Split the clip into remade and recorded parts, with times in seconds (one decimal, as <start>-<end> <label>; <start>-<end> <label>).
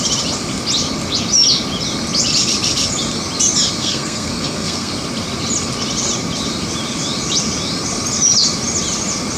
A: 0.0-3.8 recorded; 3.8-4.9 remade; 4.9-9.4 recorded